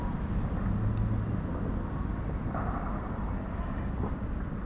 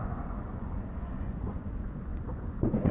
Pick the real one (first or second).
first